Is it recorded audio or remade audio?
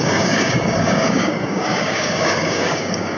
remade